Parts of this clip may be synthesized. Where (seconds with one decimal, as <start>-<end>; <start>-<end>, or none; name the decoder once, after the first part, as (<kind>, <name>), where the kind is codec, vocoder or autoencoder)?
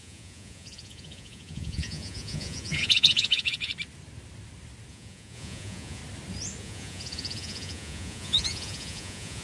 0.0-3.7 (vocoder, Vocos); 4.9-6.0; 6.6-9.4